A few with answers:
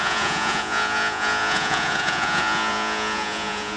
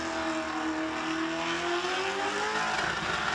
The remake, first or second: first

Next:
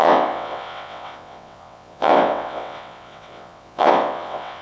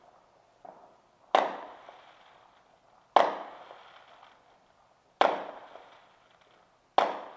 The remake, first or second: first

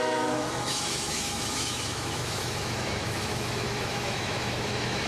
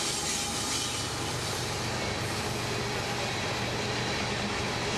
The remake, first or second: first